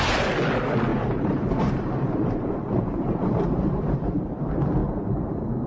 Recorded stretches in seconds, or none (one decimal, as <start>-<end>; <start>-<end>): 0.0-0.9; 4.3-4.8; 5.3-5.7